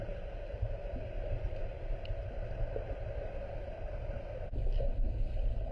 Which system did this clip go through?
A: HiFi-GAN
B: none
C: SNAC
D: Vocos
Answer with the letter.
B